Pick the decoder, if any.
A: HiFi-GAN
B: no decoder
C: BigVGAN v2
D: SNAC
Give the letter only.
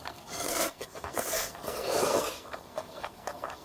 D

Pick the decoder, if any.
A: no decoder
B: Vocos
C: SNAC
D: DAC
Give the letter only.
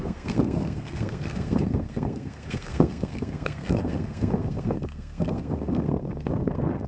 C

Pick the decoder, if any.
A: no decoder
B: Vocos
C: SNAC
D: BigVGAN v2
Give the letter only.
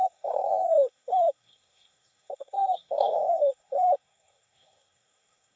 C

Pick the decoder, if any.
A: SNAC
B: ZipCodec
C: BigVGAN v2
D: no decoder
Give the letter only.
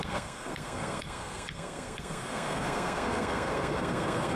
A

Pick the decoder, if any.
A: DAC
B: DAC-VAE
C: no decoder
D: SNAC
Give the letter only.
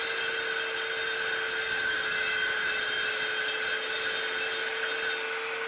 C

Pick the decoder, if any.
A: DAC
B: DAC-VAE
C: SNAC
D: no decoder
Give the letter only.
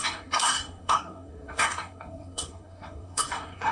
C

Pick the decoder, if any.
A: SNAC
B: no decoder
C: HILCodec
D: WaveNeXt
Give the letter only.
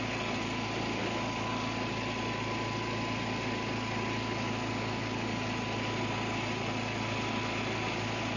B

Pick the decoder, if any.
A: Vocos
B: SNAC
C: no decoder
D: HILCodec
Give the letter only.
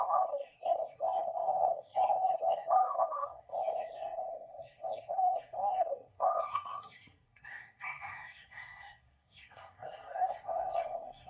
B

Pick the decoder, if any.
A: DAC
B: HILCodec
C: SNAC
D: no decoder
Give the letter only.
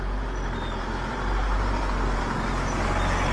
D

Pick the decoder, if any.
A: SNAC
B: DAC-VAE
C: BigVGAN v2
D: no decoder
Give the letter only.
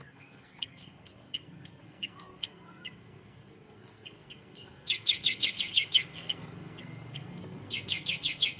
A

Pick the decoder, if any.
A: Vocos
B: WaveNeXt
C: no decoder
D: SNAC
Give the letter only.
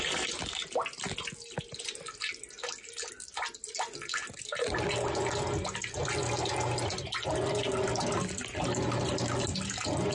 C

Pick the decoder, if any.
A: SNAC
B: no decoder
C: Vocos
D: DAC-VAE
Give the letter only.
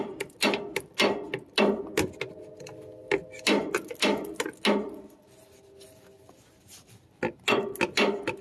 B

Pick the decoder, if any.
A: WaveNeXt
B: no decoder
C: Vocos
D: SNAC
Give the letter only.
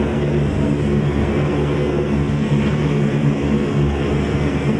D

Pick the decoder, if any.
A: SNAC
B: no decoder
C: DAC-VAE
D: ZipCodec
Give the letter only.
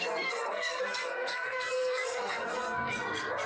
A